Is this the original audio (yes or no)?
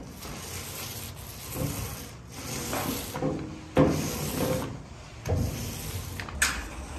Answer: yes